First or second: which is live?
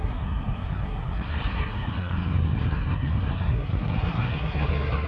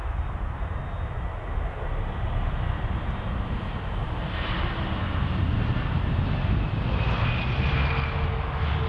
second